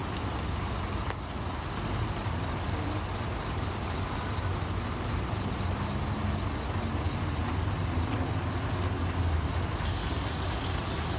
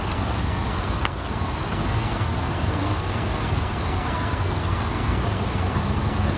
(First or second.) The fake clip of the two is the second